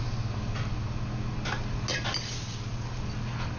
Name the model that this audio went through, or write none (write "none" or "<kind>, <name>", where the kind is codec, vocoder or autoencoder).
none